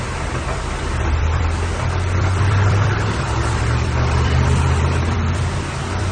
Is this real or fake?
fake